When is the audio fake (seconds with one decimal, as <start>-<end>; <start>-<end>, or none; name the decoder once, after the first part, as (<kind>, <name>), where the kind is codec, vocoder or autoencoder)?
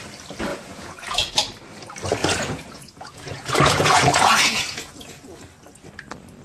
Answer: 0.5-1.3 (vocoder, Vocos); 2.2-5.4